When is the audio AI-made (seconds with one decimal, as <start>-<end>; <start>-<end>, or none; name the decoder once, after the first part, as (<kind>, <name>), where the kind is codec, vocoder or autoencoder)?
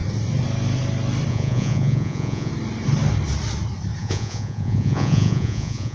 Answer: 1.3-2.5 (vocoder, Vocos); 4.0-5.9